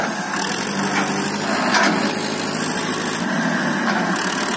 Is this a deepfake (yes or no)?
no